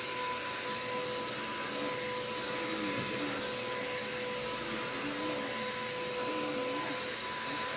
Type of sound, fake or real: real